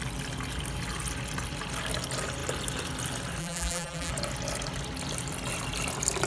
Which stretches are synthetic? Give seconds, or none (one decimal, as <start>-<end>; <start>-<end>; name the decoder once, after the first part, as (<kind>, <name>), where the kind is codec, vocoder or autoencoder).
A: 3.4-4.1 (vocoder, BigVGAN v2)